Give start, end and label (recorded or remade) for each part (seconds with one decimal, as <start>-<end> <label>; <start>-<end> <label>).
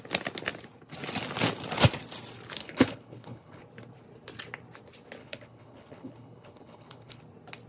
0.0-2.6 recorded; 2.6-3.6 remade; 3.6-5.2 recorded; 5.2-7.2 remade; 7.2-7.7 recorded